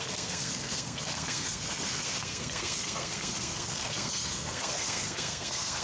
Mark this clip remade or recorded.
remade